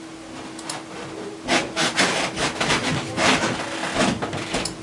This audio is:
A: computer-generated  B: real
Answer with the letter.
B